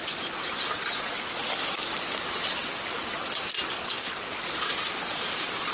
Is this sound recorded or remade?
recorded